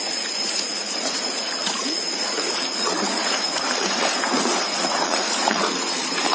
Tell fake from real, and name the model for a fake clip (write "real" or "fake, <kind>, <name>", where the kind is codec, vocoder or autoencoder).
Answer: fake, vocoder, Vocos